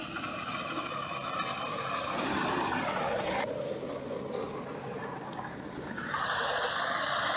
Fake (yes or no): no